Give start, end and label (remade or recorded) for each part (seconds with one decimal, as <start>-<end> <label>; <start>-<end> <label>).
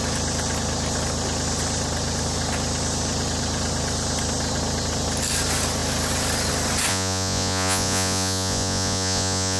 0.0-6.9 recorded; 6.9-9.6 remade